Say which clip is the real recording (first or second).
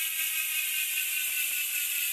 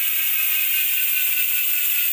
second